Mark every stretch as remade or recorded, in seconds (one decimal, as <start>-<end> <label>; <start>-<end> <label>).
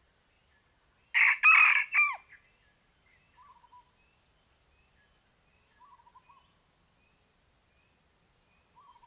0.0-9.1 recorded